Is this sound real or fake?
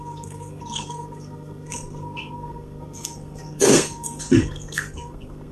fake